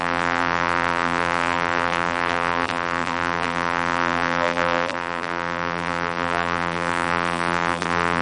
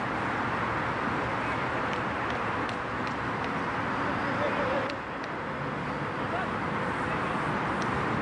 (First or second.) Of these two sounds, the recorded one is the second